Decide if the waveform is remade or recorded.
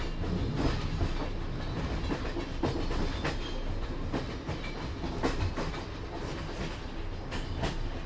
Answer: recorded